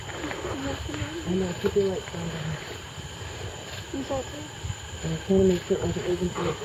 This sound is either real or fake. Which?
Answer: real